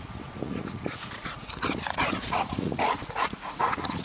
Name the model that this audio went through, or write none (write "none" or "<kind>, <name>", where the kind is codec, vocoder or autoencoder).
vocoder, Vocos